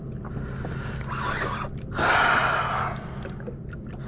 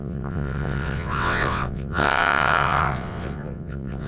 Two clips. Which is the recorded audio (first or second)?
first